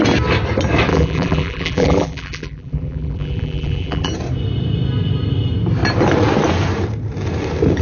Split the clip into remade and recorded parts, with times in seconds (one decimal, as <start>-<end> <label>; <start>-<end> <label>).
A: 0.0-0.9 recorded; 0.9-4.1 remade; 4.1-7.8 recorded